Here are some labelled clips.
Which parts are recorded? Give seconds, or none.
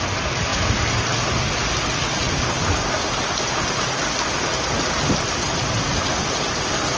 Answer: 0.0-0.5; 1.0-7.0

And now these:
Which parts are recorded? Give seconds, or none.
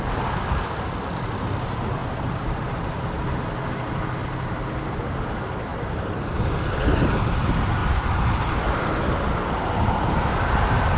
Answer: 0.0-2.0; 3.1-5.7; 7.1-7.8; 9.0-11.0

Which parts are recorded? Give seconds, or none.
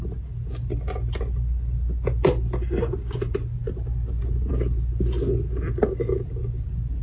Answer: 0.0-7.0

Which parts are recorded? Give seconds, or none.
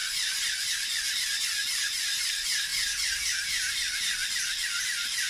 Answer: 0.0-0.7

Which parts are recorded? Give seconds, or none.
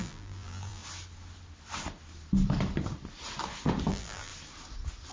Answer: 0.8-3.9; 4.3-5.1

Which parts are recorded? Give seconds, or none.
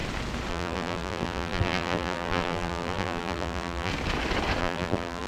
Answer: 0.0-0.5; 3.9-4.6